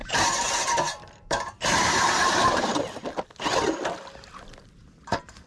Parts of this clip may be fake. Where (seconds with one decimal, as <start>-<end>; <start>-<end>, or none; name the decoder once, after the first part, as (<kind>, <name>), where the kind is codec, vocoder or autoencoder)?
0.0-2.8 (vocoder, BigVGAN v2); 4.8-5.5